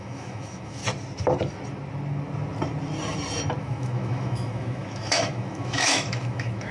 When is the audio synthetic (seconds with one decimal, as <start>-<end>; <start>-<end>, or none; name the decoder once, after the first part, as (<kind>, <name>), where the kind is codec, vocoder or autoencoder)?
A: 0.0-0.8 (autoencoder, DAC-VAE); 3.6-6.7